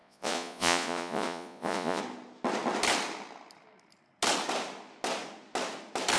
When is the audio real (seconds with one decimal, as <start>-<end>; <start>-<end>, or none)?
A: 2.0-6.2